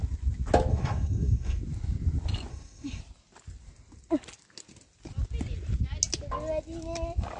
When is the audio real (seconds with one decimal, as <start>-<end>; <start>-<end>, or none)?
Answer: 0.0-0.7; 1.6-2.5; 3.0-7.4